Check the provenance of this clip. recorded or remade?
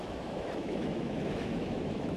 remade